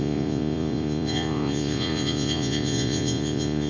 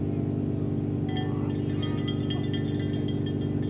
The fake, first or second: first